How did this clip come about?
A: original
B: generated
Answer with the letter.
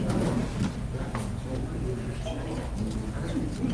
A